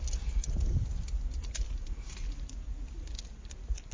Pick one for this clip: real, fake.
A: real